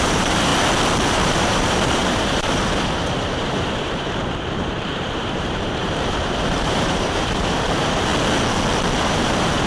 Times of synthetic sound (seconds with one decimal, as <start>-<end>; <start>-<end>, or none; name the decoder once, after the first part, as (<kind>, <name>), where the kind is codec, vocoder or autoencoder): 0.0-0.5 (vocoder, BigVGAN v2); 1.1-8.1; 9.0-9.7